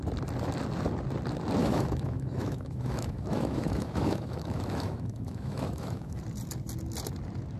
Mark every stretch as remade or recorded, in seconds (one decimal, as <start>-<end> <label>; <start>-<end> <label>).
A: 0.0-1.6 recorded; 1.6-6.2 remade; 6.2-7.6 recorded